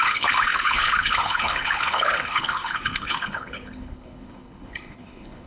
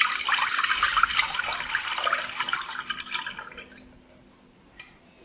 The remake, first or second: first